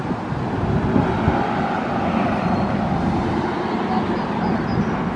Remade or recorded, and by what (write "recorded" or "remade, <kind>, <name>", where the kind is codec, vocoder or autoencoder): recorded